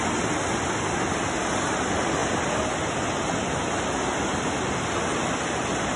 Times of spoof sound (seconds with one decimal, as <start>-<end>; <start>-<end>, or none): none

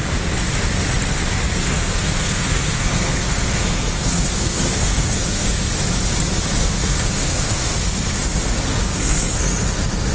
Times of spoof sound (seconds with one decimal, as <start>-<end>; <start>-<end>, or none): 1.6-5.7; 6.6-9.4

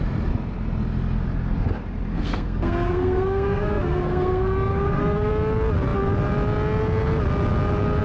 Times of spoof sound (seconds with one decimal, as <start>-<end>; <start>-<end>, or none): 2.1-5.3

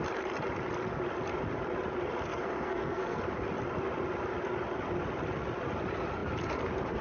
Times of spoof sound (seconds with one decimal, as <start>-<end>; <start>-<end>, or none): 2.3-3.2